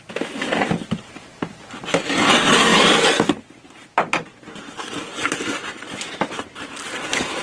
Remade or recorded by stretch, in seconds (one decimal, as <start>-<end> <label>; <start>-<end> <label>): 0.0-7.4 recorded